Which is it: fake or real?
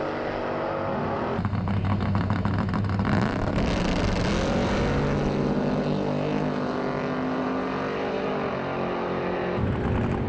real